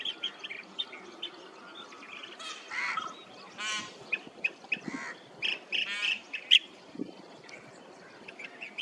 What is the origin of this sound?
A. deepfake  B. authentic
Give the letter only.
B